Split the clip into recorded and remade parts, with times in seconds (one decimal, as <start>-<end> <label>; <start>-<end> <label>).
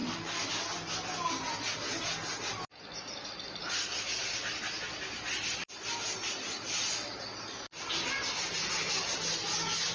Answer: 0.0-4.2 recorded; 4.2-5.7 remade; 5.7-9.9 recorded